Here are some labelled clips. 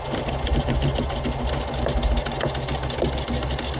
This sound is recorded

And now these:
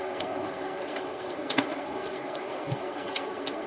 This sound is remade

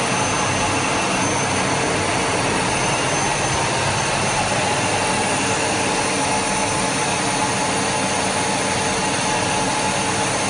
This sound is recorded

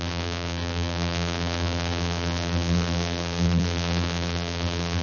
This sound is remade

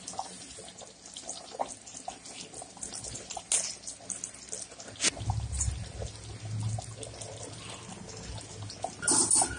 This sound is recorded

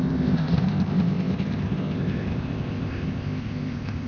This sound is remade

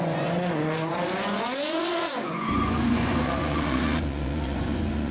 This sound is remade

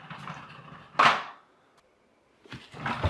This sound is recorded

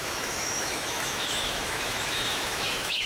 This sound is remade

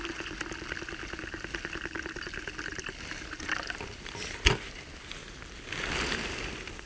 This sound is recorded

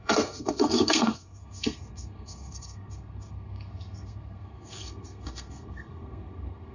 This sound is remade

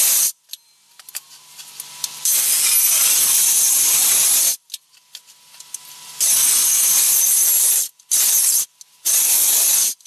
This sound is recorded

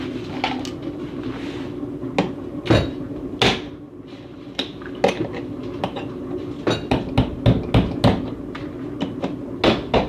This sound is recorded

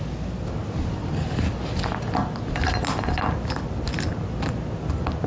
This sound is recorded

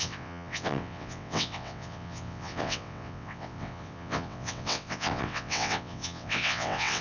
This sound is remade